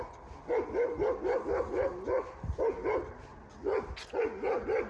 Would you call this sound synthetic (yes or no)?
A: no